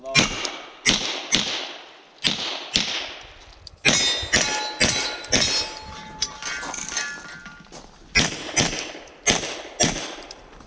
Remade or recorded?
recorded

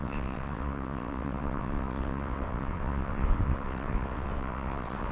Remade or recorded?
remade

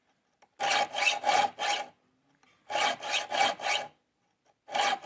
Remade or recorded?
recorded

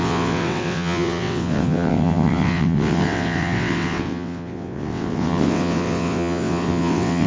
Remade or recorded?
remade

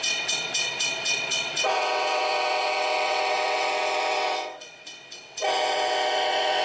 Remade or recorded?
remade